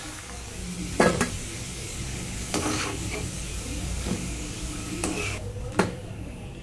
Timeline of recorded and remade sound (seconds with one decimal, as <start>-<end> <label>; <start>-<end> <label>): 0.0-0.6 remade; 0.6-1.3 recorded; 1.3-6.6 remade